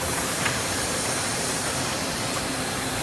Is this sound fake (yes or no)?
yes